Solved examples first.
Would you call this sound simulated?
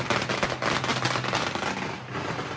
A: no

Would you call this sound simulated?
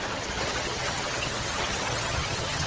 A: yes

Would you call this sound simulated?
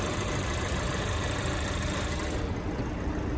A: no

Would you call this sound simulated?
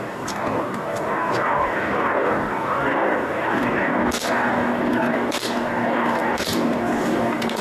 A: yes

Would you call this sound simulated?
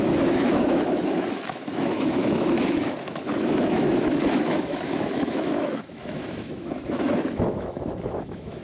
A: yes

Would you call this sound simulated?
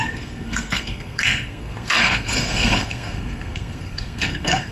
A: yes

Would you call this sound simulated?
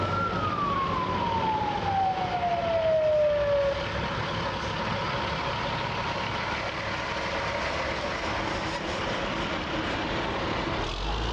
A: no